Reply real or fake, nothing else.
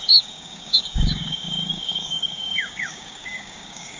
fake